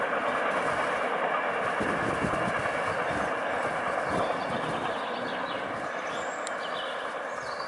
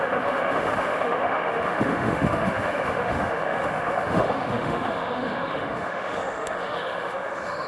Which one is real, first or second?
first